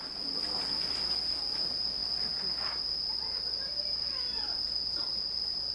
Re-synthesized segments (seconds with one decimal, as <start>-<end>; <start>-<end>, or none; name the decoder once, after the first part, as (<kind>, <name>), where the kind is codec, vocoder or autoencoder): none

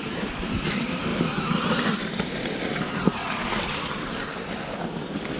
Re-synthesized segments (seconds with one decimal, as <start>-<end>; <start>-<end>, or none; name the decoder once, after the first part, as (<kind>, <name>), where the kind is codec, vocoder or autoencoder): 0.0-1.1 (vocoder, BigVGAN v2); 2.3-4.2

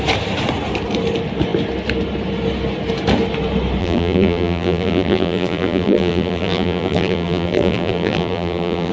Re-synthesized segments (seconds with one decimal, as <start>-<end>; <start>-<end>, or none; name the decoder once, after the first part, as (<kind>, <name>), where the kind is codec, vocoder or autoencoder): 3.8-8.9 (vocoder, BigVGAN v2)

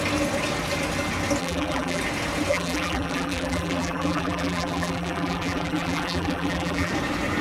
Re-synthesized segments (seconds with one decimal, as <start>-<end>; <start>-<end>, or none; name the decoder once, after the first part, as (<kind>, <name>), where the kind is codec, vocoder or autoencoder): 1.4-2.0 (vocoder, BigVGAN v2); 2.5-6.9

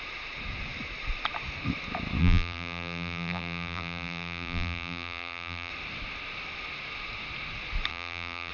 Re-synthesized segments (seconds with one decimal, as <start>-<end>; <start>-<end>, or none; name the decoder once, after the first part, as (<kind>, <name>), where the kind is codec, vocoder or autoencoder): 2.2-5.7 (vocoder, BigVGAN v2); 7.9-8.5

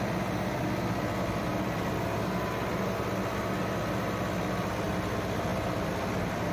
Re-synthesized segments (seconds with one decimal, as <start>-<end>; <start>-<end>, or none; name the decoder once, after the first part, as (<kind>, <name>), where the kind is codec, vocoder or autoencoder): none